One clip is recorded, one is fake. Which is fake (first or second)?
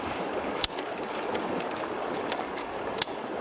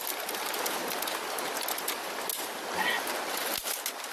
first